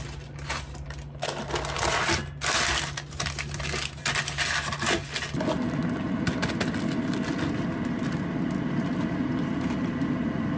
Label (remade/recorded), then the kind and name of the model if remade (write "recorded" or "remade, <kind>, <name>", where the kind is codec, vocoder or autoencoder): recorded